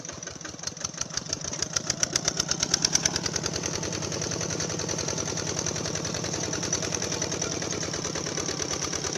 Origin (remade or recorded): remade